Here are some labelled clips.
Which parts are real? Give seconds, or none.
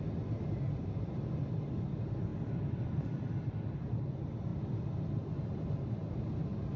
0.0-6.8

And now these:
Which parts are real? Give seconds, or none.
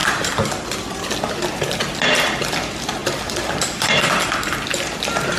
0.0-2.2; 3.0-4.5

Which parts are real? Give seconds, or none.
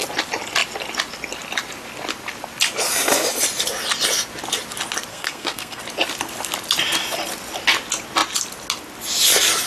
0.0-5.1; 5.8-9.7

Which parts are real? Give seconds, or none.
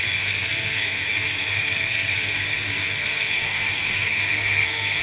none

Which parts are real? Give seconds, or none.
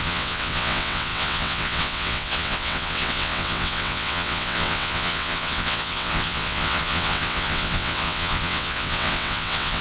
none